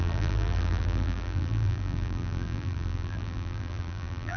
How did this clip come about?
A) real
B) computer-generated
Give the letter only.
B